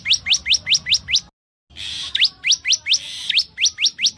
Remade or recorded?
recorded